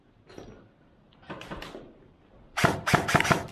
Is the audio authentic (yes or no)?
no